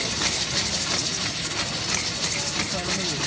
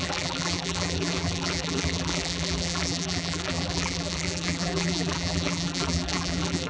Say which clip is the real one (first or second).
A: first